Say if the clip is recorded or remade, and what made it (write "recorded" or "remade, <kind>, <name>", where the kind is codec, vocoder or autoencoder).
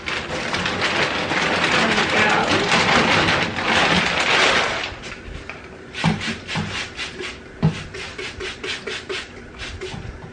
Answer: recorded